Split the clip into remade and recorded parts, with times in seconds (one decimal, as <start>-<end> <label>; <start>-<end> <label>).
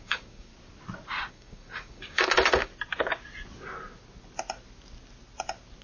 0.0-0.5 remade; 0.5-1.3 recorded; 1.3-2.7 remade; 2.7-5.8 recorded